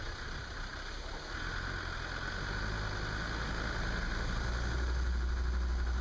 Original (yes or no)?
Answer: yes